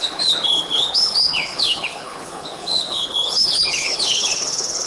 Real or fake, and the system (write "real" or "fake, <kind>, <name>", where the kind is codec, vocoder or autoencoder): fake, codec, HILCodec